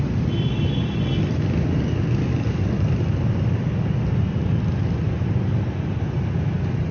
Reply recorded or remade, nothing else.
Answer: recorded